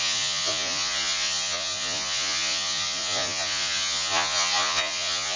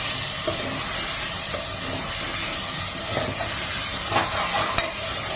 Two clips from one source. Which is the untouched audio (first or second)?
second